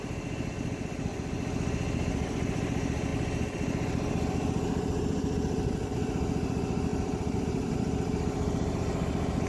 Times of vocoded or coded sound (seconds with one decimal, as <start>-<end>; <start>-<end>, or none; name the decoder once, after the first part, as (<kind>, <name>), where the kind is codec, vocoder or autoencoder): none